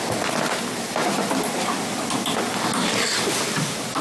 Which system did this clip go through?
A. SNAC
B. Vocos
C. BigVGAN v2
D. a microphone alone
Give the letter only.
D